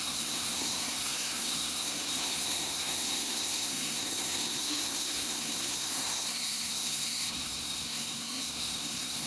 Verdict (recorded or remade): remade